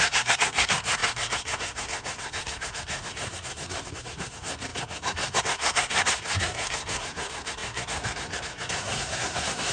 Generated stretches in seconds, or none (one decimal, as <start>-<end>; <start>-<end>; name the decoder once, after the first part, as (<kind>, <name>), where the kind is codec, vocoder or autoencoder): 0.0-9.7 (codec, SNAC)